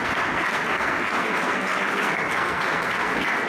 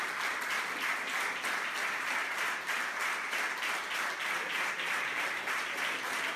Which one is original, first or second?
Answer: second